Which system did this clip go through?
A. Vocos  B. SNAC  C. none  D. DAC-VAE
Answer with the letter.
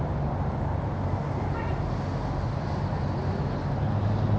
C